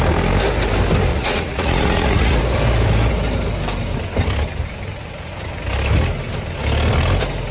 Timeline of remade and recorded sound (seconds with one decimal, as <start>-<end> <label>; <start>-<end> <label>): 0.0-1.1 recorded; 1.1-2.4 remade; 2.4-7.5 recorded